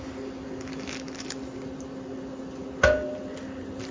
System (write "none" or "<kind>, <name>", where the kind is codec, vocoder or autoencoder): none